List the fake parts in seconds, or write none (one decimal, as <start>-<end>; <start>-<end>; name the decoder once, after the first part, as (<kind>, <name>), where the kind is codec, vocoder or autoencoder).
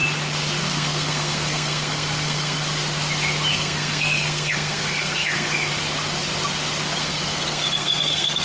0.6-2.6 (codec, SNAC); 3.5-5.7; 7.0-8.4